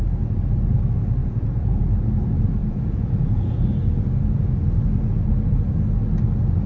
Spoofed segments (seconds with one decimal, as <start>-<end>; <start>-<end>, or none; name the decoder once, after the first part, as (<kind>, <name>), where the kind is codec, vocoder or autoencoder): 1.2-1.8 (vocoder, Vocos); 2.6-3.5